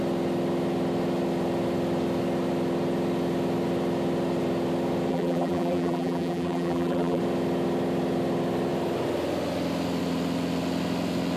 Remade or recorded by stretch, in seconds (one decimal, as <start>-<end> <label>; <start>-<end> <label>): 0.0-5.1 recorded; 5.1-7.2 remade; 7.2-11.4 recorded

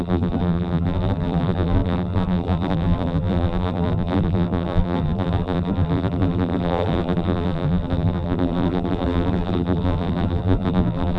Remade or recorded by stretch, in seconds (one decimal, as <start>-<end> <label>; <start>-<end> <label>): 0.0-11.2 remade

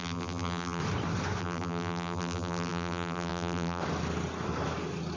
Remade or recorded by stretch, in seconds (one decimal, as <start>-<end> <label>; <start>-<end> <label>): 0.0-0.8 remade; 0.8-1.4 recorded; 1.4-3.8 remade; 3.8-5.2 recorded

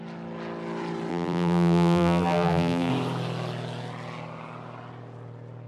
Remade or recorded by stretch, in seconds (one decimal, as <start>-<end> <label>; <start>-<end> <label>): 0.0-1.1 recorded; 1.1-2.9 remade; 2.9-5.7 recorded

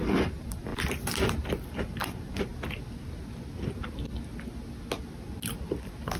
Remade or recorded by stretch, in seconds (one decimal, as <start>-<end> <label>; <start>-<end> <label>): 0.0-0.7 remade; 0.7-1.7 recorded; 1.7-2.5 remade; 2.5-6.2 recorded

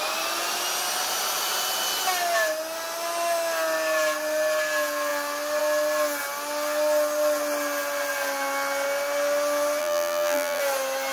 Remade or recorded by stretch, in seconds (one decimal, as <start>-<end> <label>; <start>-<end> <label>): 0.0-9.8 recorded; 9.8-10.6 remade; 10.6-11.1 recorded

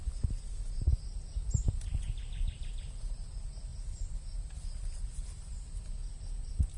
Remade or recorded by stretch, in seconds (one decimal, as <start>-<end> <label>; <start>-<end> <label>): 0.0-2.2 recorded; 2.2-2.8 remade; 2.8-3.7 recorded; 3.7-4.4 remade; 4.4-6.8 recorded

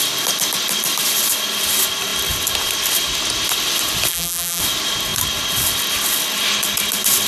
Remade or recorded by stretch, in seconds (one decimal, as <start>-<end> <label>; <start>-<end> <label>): 0.0-4.1 recorded; 4.1-4.6 remade; 4.6-7.3 recorded